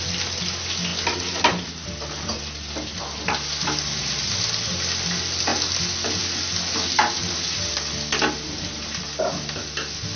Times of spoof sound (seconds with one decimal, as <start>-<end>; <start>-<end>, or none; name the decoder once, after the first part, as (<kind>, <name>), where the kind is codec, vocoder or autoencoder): none